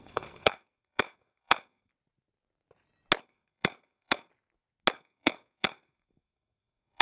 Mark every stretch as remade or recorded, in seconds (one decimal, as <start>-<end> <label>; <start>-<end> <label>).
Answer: 0.0-1.9 remade; 1.9-3.2 recorded; 3.2-4.3 remade; 4.3-4.9 recorded; 4.9-7.0 remade